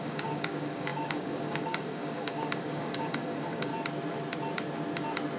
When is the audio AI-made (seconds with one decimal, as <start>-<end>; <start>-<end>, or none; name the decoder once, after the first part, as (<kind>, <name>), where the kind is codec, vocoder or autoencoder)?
0.0-3.7 (codec, DAC)